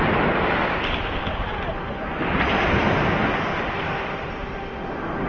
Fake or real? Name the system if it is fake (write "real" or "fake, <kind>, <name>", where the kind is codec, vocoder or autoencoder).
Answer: real